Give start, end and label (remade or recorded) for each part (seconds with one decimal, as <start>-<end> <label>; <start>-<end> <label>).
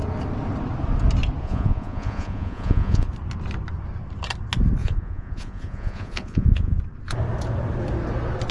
0.0-1.4 recorded; 1.4-3.1 remade; 3.1-4.8 recorded; 4.8-6.8 remade; 6.8-8.5 recorded